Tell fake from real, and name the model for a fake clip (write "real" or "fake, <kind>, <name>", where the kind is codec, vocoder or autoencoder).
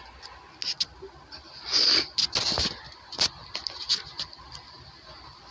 real